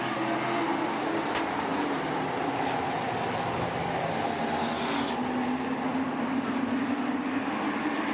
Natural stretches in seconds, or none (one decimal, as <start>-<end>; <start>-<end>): 0.0-1.7; 2.5-5.9